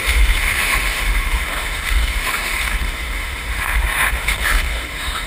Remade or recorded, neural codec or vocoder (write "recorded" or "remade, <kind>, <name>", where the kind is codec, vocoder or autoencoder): remade, autoencoder, DAC-VAE